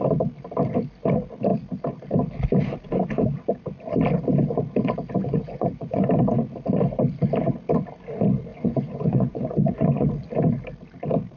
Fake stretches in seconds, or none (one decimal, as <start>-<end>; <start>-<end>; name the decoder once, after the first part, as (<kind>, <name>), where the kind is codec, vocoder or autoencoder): 5.2-6.0 (vocoder, Vocos); 8.5-10.1